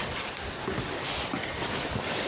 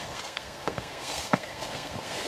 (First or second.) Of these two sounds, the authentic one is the first